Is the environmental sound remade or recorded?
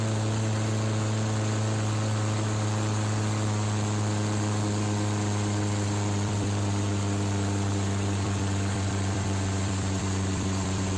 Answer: remade